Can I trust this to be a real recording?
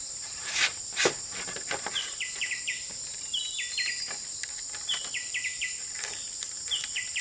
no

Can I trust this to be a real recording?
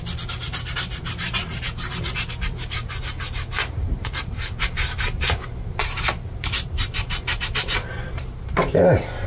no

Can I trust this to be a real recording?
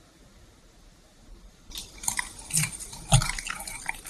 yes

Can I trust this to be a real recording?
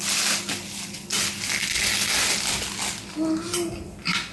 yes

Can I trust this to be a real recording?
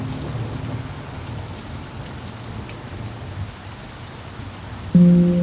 yes